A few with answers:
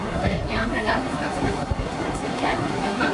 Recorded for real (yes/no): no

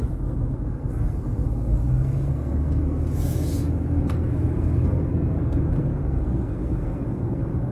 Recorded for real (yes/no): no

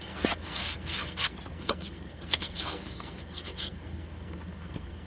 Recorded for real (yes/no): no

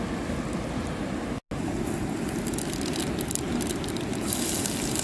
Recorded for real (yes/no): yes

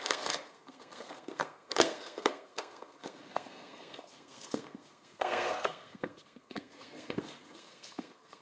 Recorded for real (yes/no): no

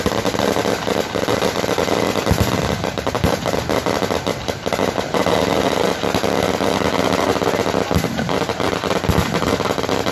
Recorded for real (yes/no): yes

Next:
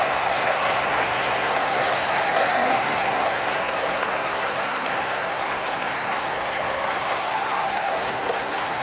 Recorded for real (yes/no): no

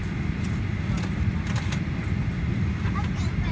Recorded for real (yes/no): yes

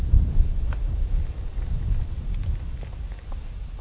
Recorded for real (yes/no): yes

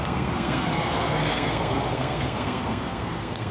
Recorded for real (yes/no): no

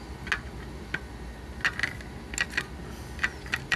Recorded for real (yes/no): yes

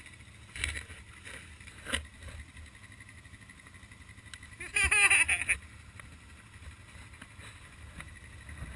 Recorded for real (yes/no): yes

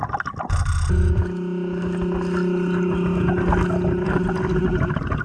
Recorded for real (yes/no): yes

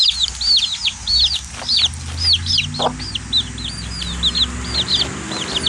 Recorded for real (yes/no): yes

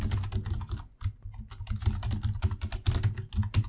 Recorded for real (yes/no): yes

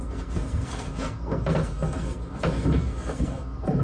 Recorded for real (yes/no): no